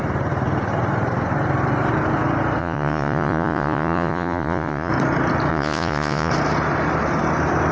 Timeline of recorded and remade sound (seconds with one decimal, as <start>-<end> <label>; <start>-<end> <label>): 0.0-2.6 recorded; 2.6-4.9 remade; 4.9-5.5 recorded; 5.5-6.3 remade; 6.3-7.7 recorded